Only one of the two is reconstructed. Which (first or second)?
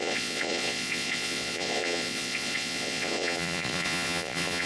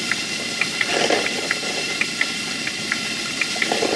first